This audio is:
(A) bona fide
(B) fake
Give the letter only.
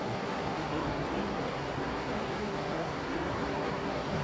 B